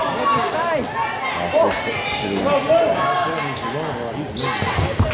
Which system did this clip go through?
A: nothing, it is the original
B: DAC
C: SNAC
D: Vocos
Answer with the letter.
A